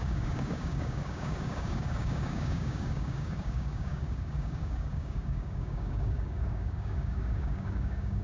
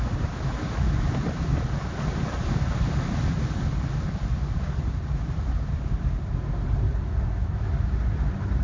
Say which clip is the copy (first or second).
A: first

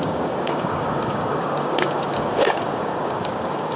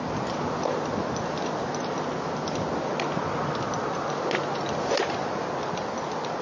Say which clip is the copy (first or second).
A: first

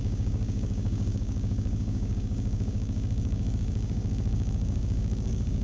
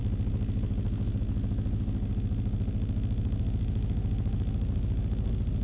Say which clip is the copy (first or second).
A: first